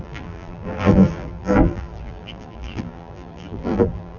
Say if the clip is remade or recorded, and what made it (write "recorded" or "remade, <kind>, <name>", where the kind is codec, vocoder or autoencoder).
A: remade, vocoder, BigVGAN v2